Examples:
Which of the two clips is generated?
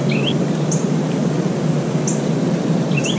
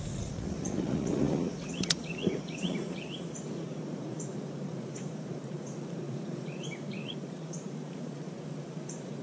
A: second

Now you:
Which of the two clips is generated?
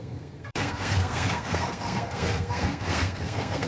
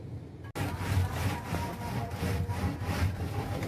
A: first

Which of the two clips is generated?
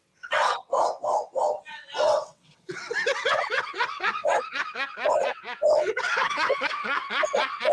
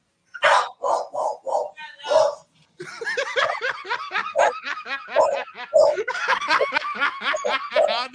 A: first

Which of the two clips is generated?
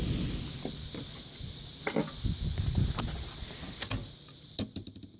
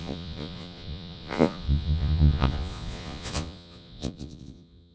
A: second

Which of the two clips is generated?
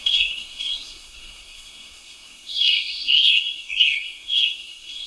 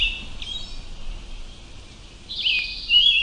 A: first